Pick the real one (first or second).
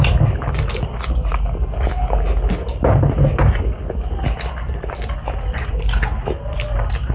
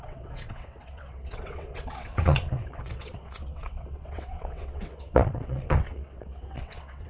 first